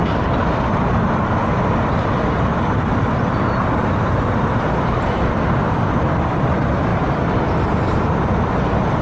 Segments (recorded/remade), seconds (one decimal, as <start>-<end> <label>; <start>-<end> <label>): 0.0-0.4 remade; 0.4-2.0 recorded; 2.0-2.5 remade; 2.5-6.3 recorded; 6.3-9.0 remade

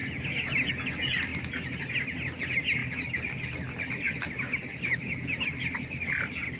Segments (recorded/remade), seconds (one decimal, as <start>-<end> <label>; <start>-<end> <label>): 0.0-6.6 recorded

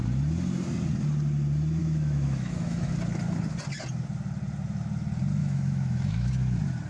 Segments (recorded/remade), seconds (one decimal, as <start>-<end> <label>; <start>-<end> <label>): 0.0-1.8 recorded; 1.8-2.9 remade; 2.9-5.4 recorded; 5.4-6.3 remade; 6.3-6.9 recorded

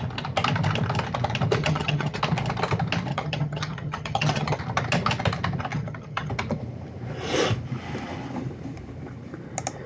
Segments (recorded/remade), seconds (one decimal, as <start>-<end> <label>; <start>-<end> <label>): 0.0-1.6 recorded; 1.6-2.2 remade; 2.2-3.1 recorded; 3.1-4.6 remade; 4.6-5.7 recorded; 5.7-6.3 remade; 6.3-9.9 recorded

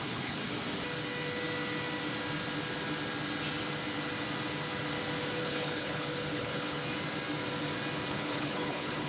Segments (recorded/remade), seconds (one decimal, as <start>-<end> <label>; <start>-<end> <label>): 0.0-0.4 remade; 0.4-5.4 recorded; 5.4-6.8 remade; 6.8-8.1 recorded; 8.1-9.1 remade

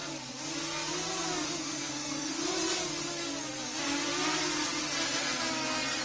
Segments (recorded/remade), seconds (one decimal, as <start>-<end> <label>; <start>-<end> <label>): 0.0-1.6 recorded; 1.6-2.4 remade; 2.4-6.0 recorded

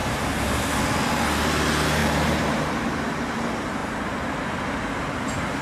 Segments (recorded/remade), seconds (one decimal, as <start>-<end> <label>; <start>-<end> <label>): 0.0-0.6 remade; 0.6-2.0 recorded; 2.0-2.6 remade; 2.6-3.8 recorded; 3.8-4.6 remade; 4.6-5.6 recorded